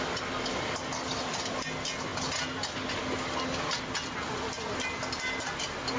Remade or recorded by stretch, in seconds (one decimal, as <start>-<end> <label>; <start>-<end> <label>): 0.0-6.0 recorded